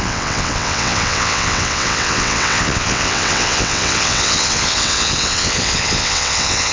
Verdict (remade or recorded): remade